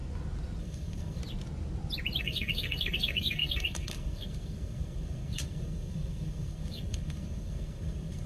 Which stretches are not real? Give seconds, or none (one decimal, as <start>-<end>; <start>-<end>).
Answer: 0.6-1.2; 2.2-8.3